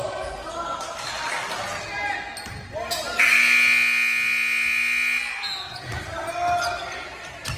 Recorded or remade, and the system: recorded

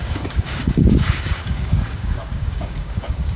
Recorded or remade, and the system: remade, codec, DAC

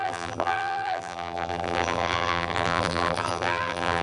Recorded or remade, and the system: remade, vocoder, BigVGAN v2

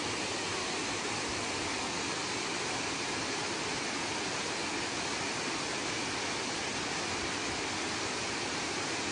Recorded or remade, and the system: recorded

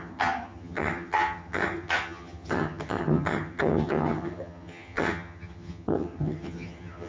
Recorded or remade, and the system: remade, vocoder, HiFi-GAN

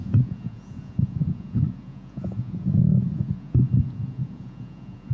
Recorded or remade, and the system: remade, vocoder, Vocos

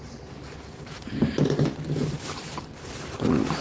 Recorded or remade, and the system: remade, vocoder, BigVGAN v2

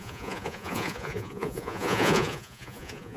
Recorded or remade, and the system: remade, vocoder, Vocos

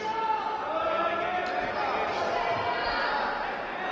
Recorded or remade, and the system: recorded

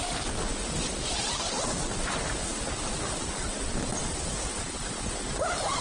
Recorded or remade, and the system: recorded